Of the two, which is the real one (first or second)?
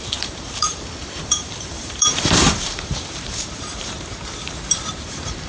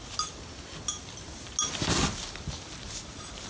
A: second